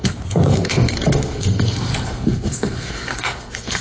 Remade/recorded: remade